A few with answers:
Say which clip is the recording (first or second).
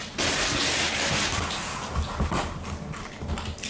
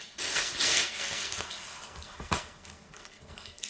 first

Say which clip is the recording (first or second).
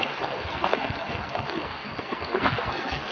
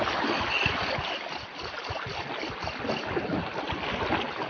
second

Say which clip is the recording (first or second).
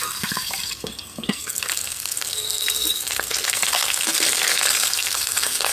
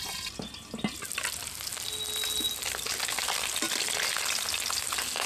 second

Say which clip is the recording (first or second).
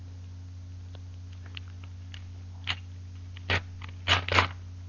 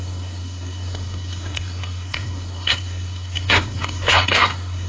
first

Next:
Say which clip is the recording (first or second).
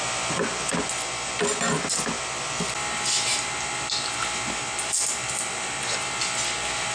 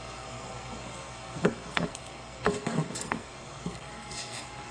first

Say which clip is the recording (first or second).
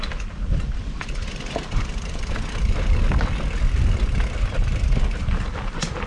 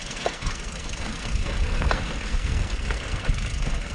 first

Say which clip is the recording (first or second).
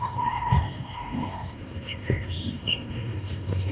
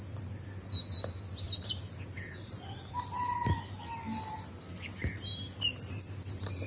second